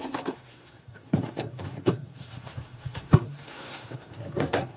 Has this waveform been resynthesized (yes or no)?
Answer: yes